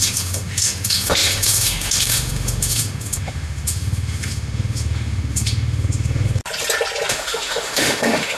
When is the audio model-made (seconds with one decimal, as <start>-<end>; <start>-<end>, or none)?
0.0-6.4; 7.1-8.4